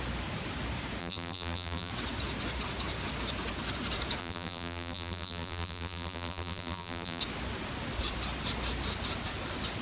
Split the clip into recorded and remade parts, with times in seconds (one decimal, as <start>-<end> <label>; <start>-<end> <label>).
0.0-1.0 recorded; 1.0-1.9 remade; 1.9-4.2 recorded; 4.2-7.2 remade; 7.2-9.8 recorded